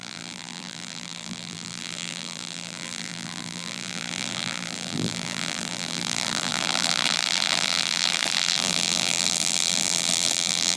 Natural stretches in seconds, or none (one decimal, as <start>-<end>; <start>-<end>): none

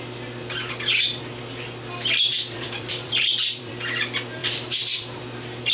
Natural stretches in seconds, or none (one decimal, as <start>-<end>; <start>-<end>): 0.0-2.3; 3.7-4.4; 5.2-5.7

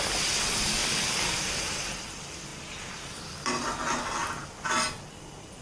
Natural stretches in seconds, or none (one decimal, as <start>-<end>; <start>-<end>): 0.0-0.8; 1.5-2.5; 3.2-5.6

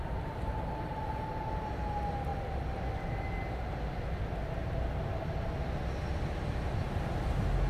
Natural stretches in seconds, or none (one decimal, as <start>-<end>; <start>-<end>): 0.0-7.7

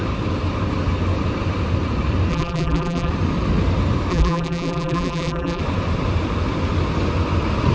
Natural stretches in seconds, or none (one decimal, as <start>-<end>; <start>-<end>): 0.0-2.3; 3.1-4.1; 5.6-7.7

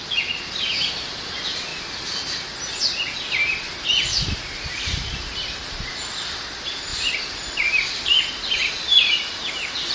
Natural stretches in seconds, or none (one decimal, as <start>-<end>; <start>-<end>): 0.0-4.1; 5.3-6.9; 8.2-9.9

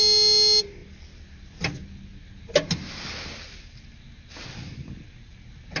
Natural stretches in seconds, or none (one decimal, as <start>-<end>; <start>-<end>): 0.0-5.8

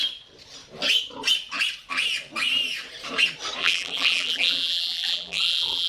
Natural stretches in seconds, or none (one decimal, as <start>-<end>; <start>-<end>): 0.0-3.6